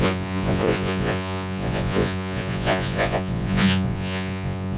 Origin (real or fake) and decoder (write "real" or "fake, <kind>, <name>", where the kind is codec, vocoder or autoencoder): fake, vocoder, Vocos